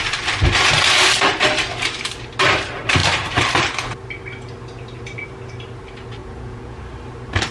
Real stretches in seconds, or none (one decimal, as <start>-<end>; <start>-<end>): 0.0-6.2; 6.8-7.5